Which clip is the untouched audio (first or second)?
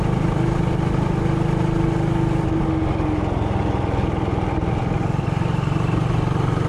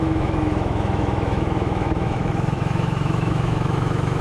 first